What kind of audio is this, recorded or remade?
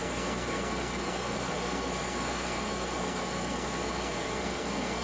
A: remade